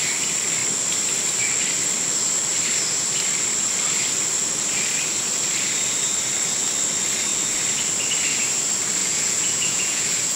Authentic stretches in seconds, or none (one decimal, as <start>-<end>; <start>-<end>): 0.0-9.0